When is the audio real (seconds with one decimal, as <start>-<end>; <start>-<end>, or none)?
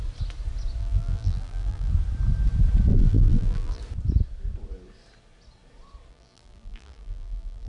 0.0-0.8; 1.9-2.9; 3.8-6.1